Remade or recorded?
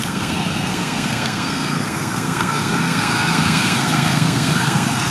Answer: remade